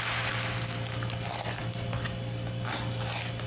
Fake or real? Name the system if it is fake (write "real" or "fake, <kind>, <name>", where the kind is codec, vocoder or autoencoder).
real